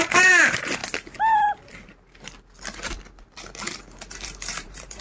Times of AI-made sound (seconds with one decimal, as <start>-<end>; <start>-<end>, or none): 0.0-0.8; 3.8-5.0